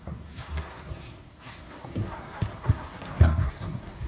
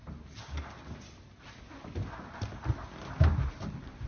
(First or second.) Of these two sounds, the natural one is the second